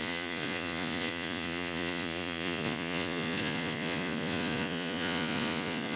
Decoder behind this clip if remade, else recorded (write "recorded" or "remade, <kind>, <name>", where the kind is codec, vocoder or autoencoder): remade, vocoder, Vocos